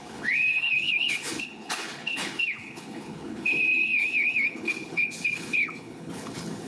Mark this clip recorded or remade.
remade